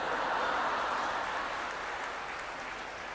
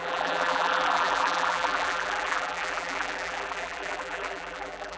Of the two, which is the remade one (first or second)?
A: second